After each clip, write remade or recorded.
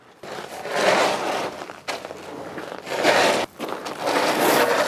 recorded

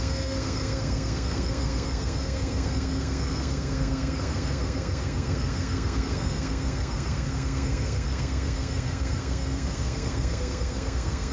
remade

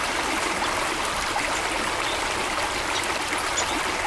recorded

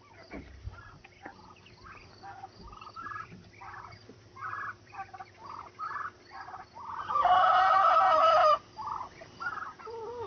remade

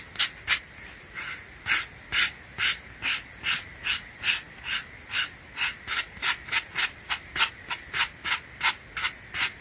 recorded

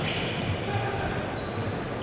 recorded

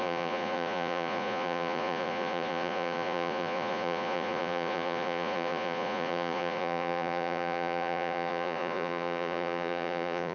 remade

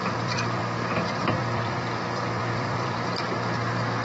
remade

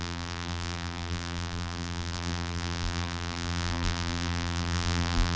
remade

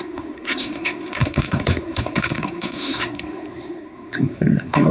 remade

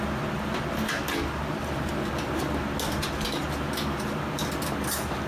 recorded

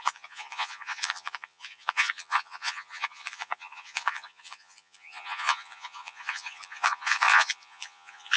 remade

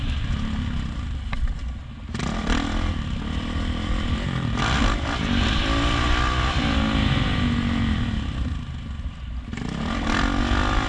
recorded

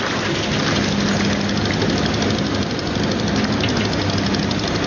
recorded